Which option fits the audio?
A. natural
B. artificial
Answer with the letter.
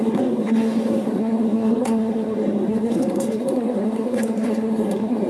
B